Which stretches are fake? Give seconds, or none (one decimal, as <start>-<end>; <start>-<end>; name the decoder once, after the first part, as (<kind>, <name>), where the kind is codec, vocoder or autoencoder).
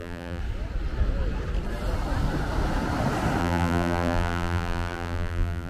0.0-0.4 (vocoder, BigVGAN v2); 3.4-5.7